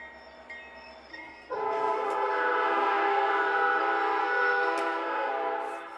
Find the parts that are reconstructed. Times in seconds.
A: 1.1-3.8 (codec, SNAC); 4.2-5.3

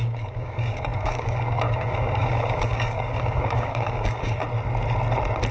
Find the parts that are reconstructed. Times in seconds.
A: 0.0-4.4 (codec, DAC)